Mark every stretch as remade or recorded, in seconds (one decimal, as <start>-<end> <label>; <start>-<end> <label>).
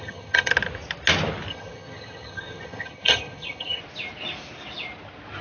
0.0-0.5 remade; 0.5-1.5 recorded; 1.5-3.8 remade; 3.8-5.4 recorded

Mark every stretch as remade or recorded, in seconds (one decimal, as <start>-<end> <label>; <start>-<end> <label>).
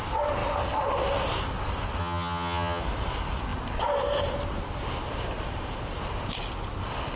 0.0-2.0 recorded; 2.0-2.8 remade; 2.8-7.2 recorded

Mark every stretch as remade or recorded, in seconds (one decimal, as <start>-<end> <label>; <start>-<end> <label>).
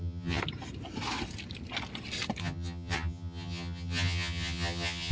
0.0-0.4 remade; 0.4-2.4 recorded; 2.4-5.1 remade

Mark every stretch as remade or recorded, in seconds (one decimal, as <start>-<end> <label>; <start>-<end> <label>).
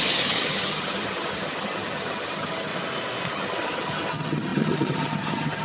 0.0-2.7 remade; 2.7-3.3 recorded; 3.3-5.6 remade